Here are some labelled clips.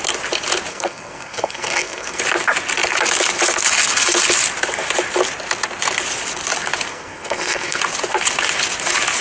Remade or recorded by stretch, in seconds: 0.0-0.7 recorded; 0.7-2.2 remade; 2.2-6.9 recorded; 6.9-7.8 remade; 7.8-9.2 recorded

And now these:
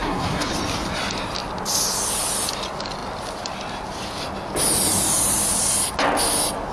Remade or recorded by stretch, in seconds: 0.0-0.5 remade; 0.5-6.7 recorded

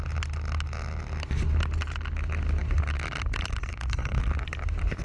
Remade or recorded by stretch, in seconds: 0.0-3.7 recorded; 3.7-4.2 remade; 4.2-5.0 recorded

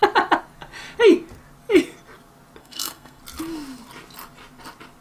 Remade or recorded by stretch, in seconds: 0.0-2.6 recorded; 2.6-3.2 remade; 3.2-5.0 recorded

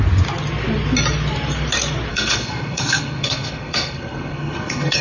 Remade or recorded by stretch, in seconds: 0.0-2.1 recorded; 2.1-5.0 remade

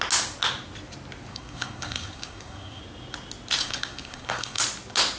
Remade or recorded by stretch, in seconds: 0.0-1.3 recorded; 1.3-2.8 remade; 2.8-3.6 recorded; 3.6-4.6 remade; 4.6-5.2 recorded

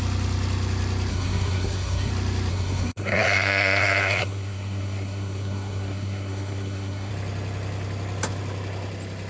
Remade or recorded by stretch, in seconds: 0.0-1.1 recorded; 1.1-2.1 remade; 2.1-2.5 recorded; 2.5-7.1 remade; 7.1-9.3 recorded